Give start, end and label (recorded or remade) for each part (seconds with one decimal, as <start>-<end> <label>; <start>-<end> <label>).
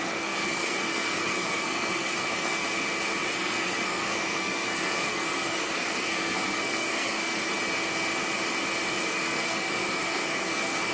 0.0-2.6 remade; 2.6-3.3 recorded; 3.3-7.5 remade; 7.5-8.9 recorded; 8.9-10.9 remade